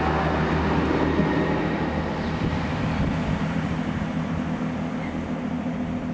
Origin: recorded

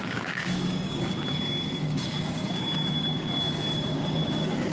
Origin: remade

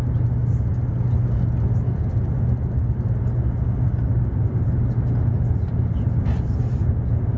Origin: recorded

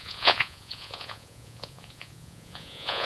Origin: remade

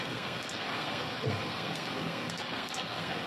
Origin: remade